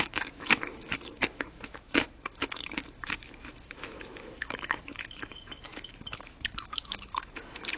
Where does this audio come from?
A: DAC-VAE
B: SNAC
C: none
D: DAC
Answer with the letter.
A